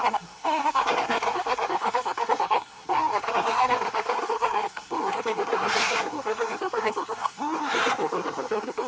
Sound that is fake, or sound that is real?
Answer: fake